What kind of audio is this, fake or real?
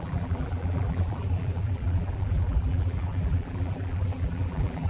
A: fake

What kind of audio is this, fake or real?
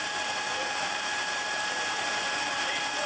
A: fake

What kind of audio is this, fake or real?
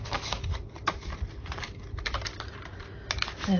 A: fake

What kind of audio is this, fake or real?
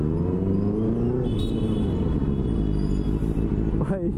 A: real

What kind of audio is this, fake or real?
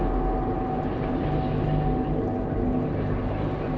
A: real